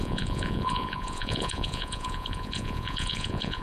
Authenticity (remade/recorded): remade